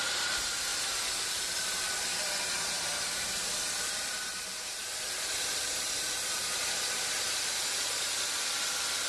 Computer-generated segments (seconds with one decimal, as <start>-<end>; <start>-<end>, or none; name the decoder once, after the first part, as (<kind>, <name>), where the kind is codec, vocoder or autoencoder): 0.0-0.7 (vocoder, BigVGAN v2); 1.4-7.5